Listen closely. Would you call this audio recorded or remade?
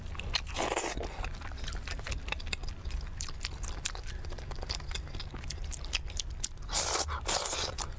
recorded